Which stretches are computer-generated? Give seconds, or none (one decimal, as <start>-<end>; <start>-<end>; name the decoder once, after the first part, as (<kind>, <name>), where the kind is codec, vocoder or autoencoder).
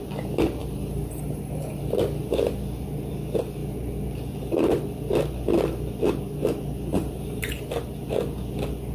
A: 0.6-1.8 (vocoder, BigVGAN v2); 6.9-7.4